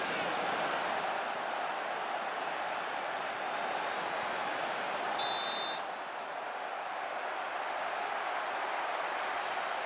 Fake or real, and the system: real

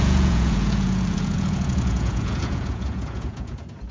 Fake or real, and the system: fake, vocoder, Vocos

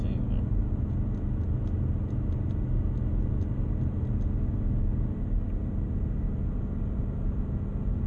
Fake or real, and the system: real